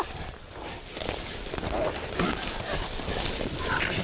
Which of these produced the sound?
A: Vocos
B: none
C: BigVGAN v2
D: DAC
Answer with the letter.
C